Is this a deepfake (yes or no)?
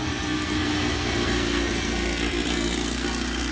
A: yes